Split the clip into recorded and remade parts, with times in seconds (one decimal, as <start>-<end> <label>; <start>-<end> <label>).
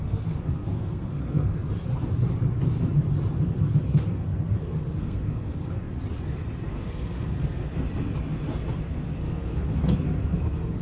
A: 0.0-1.6 remade; 1.6-3.4 recorded; 3.4-5.9 remade; 5.9-6.7 recorded; 6.7-7.7 remade; 7.7-8.7 recorded; 8.7-10.8 remade